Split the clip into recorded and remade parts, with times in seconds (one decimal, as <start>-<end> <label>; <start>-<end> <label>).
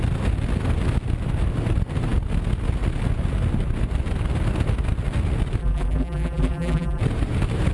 0.0-5.6 recorded; 5.6-7.0 remade; 7.0-7.7 recorded